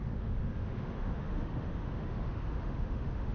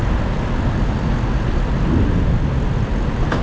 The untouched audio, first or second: second